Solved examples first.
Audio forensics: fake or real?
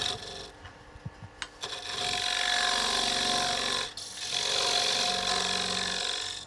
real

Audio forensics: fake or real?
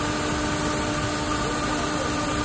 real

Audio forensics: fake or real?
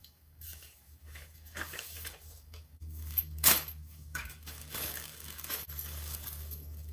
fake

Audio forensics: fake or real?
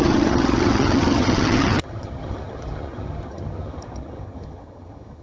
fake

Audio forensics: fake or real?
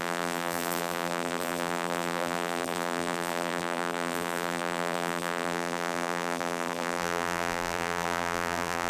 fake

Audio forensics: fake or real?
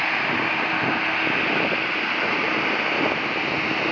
real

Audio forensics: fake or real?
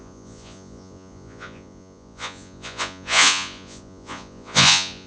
fake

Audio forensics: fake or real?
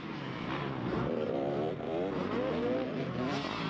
real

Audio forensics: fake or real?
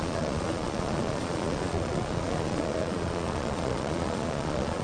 fake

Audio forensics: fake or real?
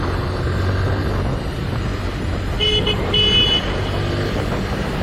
real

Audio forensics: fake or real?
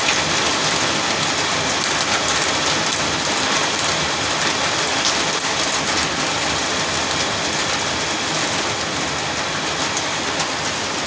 real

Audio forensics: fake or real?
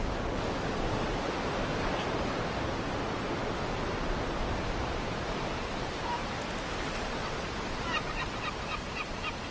real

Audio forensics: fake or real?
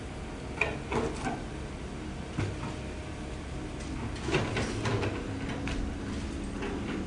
real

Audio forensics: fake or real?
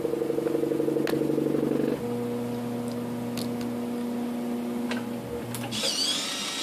real